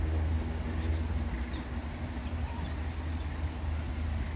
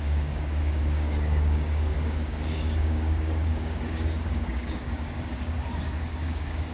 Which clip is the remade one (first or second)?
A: second